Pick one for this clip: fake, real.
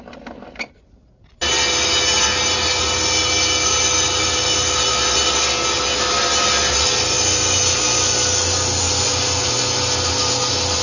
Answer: real